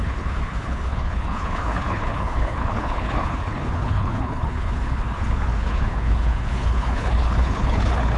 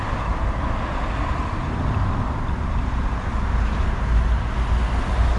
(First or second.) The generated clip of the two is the first